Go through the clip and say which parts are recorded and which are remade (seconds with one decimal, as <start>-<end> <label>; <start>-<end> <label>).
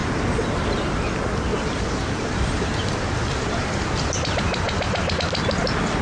0.0-1.1 remade; 1.1-1.5 recorded; 1.5-5.1 remade; 5.1-6.0 recorded